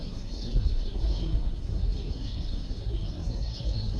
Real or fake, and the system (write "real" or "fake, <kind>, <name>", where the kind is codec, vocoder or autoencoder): fake, codec, SNAC